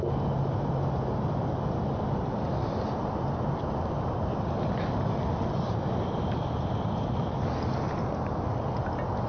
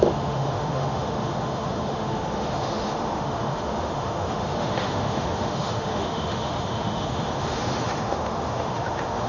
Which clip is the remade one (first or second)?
second